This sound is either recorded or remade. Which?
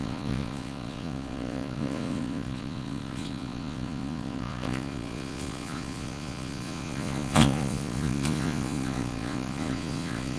remade